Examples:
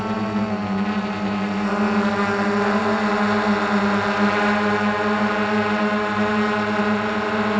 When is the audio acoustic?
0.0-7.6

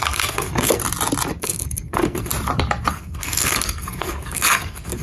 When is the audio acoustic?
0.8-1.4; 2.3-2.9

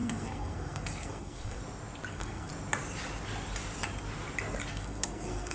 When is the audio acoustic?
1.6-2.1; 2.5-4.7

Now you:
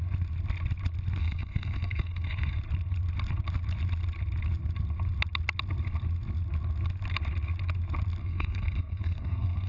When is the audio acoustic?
0.0-1.2; 2.6-8.2

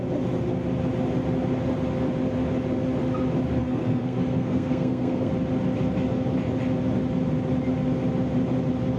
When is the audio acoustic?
0.0-3.6; 5.3-9.0

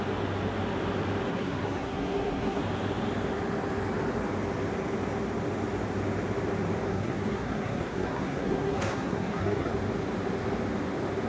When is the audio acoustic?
0.0-1.3; 2.6-6.9; 9.7-11.3

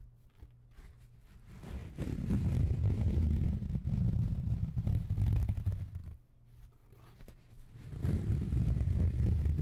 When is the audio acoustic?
0.0-9.6